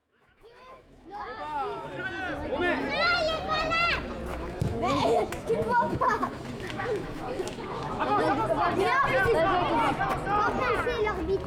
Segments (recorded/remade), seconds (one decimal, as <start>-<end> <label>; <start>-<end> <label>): 0.0-1.9 remade; 1.9-4.3 recorded; 4.3-8.2 remade; 8.2-11.5 recorded